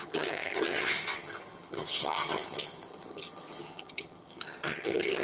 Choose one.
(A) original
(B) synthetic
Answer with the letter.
B